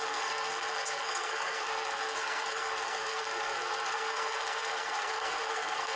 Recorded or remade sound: remade